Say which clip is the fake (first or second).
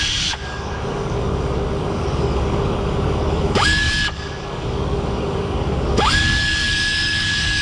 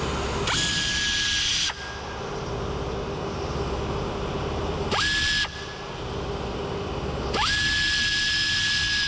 first